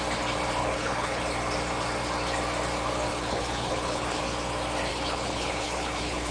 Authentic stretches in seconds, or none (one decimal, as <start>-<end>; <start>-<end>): 0.0-0.6; 1.2-3.1; 4.2-4.9